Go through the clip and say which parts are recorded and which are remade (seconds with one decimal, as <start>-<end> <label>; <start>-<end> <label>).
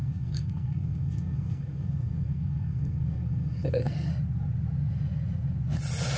0.0-4.1 remade; 4.1-6.2 recorded